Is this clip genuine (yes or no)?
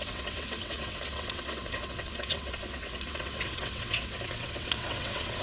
no